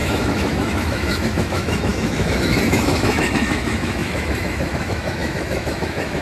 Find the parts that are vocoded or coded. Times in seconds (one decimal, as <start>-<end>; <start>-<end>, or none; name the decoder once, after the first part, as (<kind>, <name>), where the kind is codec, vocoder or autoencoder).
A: 0.0-6.2 (autoencoder, DAC-VAE)